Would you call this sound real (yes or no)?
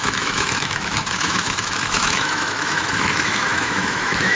no